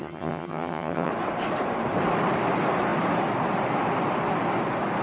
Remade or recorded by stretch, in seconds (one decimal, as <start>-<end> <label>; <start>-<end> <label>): 0.0-1.1 remade; 1.1-5.0 recorded